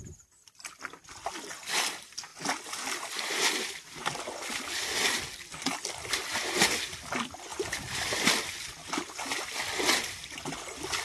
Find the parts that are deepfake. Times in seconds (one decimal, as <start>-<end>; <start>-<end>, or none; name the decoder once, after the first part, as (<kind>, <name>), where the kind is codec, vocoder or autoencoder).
none